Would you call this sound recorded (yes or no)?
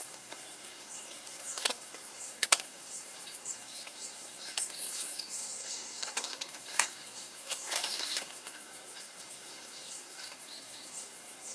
no